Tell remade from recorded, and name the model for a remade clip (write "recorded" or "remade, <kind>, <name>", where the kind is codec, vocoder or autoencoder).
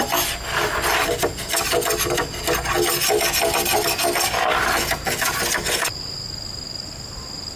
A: recorded